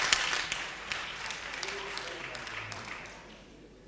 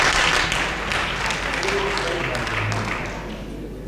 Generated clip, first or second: first